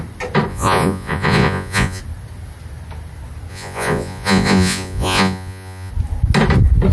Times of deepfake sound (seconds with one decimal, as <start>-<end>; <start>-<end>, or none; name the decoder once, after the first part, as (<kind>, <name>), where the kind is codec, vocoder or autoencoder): 0.5-2.0 (vocoder, Vocos); 3.5-5.9